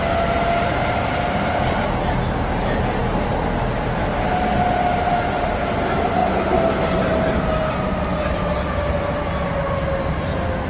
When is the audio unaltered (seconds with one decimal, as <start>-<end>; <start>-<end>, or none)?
0.0-10.7

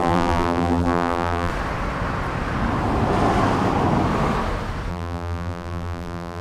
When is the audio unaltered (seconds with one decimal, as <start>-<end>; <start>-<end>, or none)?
1.5-4.9

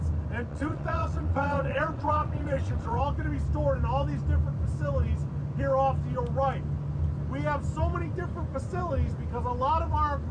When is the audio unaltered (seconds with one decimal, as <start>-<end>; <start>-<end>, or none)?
0.0-0.5; 3.0-10.3